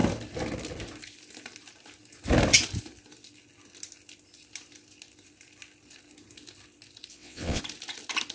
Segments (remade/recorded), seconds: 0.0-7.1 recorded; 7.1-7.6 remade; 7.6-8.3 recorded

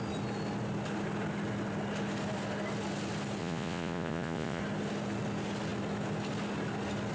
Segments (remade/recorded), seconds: 0.0-3.4 recorded; 3.4-4.6 remade; 4.6-7.1 recorded

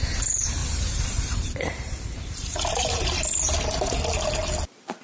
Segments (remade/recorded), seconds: 0.0-0.6 recorded; 0.6-2.9 remade; 2.9-5.0 recorded

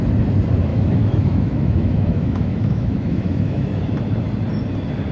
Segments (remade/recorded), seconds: 0.0-0.7 recorded; 0.7-3.8 remade; 3.8-5.1 recorded

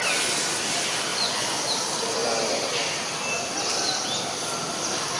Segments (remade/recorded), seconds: 0.0-1.1 recorded; 1.1-1.7 remade; 1.7-5.2 recorded

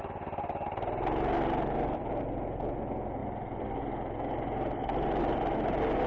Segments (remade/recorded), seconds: 0.0-6.1 recorded

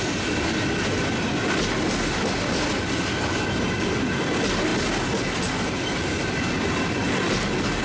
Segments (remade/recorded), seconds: 0.0-7.8 recorded